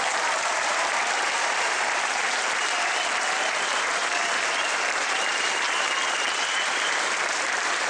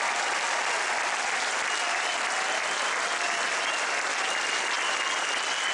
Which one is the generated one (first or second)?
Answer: first